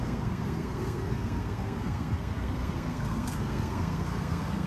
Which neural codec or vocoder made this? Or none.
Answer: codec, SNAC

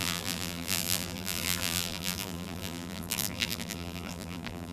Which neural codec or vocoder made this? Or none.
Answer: vocoder, BigVGAN v2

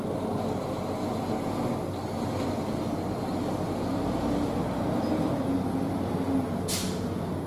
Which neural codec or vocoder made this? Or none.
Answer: none